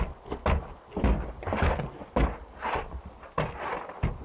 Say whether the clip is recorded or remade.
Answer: recorded